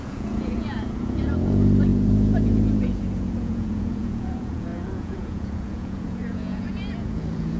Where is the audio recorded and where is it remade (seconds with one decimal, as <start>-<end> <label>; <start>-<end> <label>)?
0.0-7.6 remade